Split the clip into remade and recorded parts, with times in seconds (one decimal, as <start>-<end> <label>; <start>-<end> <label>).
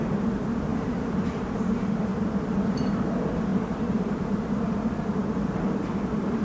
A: 0.0-2.1 recorded; 2.1-3.1 remade; 3.1-3.5 recorded; 3.5-6.4 remade